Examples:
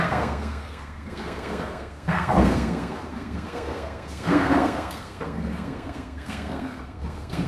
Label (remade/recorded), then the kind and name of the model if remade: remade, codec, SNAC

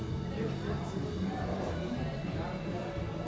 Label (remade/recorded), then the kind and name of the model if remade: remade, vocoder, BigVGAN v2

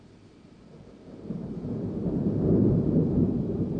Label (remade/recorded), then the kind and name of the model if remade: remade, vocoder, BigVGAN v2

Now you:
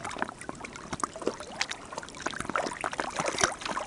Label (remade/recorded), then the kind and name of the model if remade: recorded